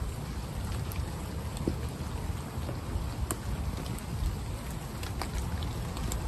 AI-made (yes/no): no